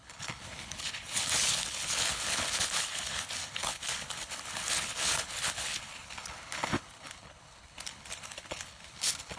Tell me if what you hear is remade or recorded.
remade